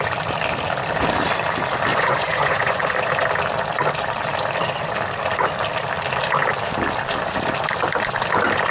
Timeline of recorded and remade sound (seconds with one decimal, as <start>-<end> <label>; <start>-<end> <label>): 0.0-1.9 recorded; 1.9-3.1 remade; 3.1-8.7 recorded